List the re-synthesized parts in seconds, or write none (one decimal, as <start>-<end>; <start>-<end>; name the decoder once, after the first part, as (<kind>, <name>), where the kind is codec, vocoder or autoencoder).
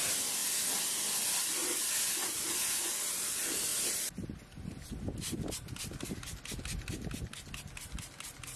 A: none